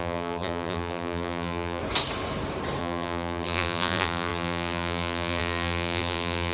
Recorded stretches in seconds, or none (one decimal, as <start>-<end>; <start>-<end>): 1.8-2.8